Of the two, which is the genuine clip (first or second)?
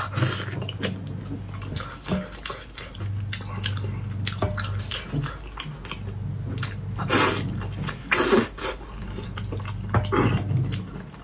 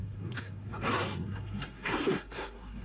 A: first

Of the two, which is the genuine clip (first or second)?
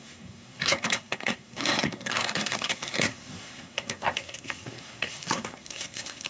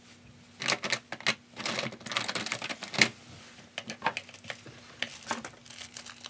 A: second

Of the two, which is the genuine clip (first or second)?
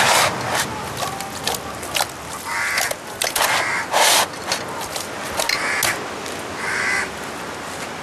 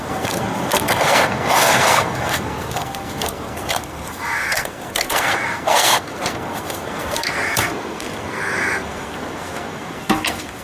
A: first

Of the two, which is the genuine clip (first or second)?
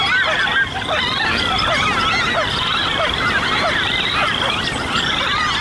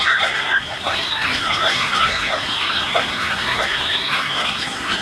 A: first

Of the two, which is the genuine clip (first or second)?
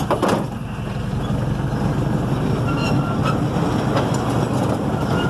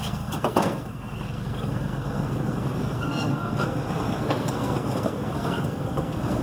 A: first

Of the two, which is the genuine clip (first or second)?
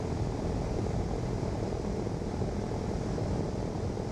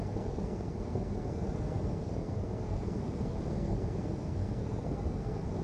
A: first